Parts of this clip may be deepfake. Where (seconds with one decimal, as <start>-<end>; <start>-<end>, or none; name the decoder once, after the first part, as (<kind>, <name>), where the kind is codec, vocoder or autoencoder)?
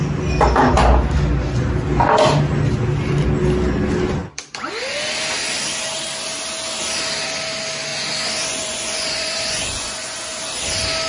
7.9-10.4 (vocoder, Vocos)